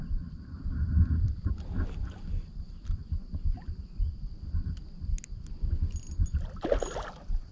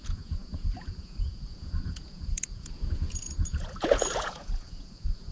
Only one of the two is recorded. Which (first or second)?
first